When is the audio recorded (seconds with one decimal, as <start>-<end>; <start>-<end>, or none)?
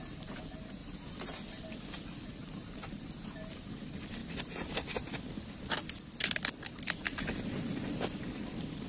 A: 0.0-2.4; 3.0-8.9